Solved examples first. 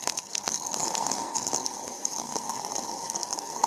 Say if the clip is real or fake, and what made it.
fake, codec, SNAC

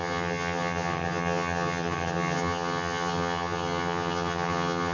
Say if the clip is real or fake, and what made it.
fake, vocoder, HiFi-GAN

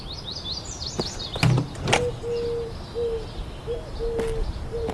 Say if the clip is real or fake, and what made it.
real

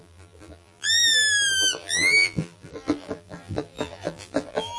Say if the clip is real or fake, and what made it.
fake, vocoder, BigVGAN v2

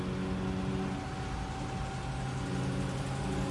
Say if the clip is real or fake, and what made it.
real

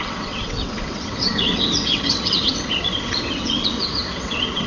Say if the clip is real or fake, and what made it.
fake, vocoder, WaveNeXt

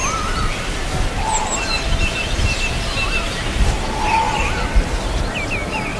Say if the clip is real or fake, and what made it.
real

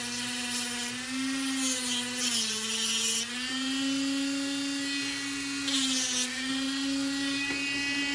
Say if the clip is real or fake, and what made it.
real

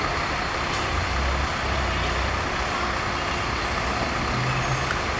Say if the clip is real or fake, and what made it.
real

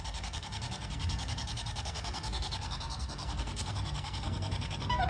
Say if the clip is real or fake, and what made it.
fake, codec, SNAC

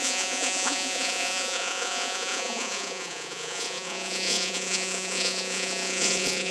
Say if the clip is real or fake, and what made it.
fake, vocoder, Vocos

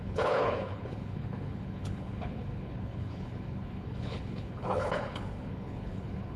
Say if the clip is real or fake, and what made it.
fake, codec, HILCodec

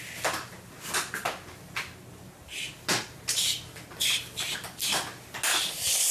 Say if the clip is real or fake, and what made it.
real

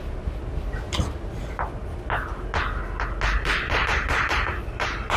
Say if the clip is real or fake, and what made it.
real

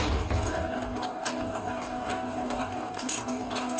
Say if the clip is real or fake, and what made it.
fake, codec, DAC